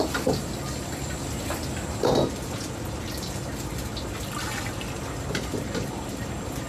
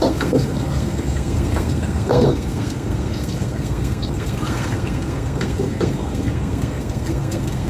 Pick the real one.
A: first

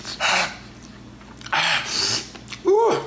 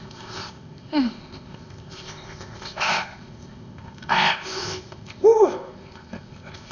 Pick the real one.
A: first